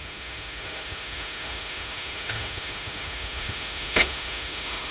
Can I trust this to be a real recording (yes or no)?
no